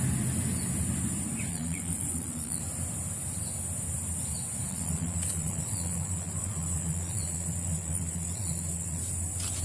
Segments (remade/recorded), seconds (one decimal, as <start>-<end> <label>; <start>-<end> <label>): 0.0-1.5 recorded; 1.5-2.6 remade; 2.6-4.7 recorded; 4.7-9.0 remade; 9.0-9.6 recorded